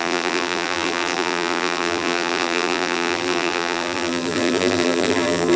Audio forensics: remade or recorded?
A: remade